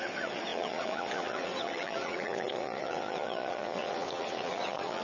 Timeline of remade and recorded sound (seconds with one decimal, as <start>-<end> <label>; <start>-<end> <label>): 0.0-5.0 remade

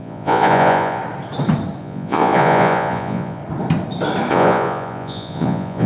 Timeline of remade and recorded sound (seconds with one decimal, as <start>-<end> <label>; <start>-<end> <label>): 0.0-1.0 remade; 1.0-1.8 recorded; 1.8-3.4 remade; 3.4-4.3 recorded; 4.3-5.9 remade

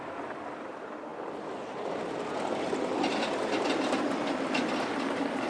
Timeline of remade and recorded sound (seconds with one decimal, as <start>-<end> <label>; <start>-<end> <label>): 0.0-5.5 recorded

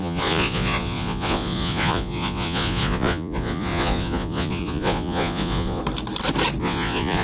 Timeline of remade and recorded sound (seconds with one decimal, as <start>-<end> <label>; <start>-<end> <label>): 0.0-5.8 remade; 5.8-6.6 recorded; 6.6-7.2 remade

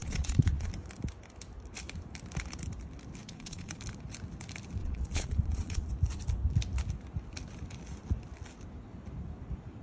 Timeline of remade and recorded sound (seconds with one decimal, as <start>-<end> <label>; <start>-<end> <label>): 0.0-0.7 remade; 0.7-3.2 recorded; 3.2-3.8 remade; 3.8-4.8 recorded; 4.8-5.9 remade; 5.9-9.8 recorded

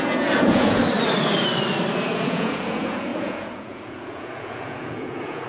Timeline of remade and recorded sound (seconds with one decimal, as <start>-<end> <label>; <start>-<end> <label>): 0.0-0.8 remade; 0.8-2.1 recorded; 2.1-5.5 remade